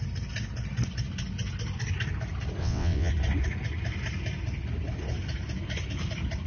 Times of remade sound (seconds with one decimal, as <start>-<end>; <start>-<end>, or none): 2.6-3.1